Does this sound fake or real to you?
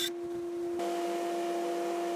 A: real